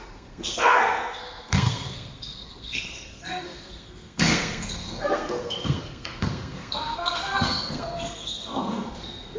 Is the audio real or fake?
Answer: fake